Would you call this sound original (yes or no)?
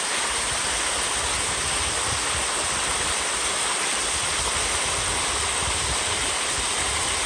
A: yes